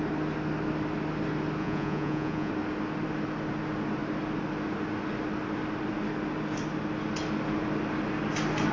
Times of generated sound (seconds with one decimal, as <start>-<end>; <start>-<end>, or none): 1.6-2.5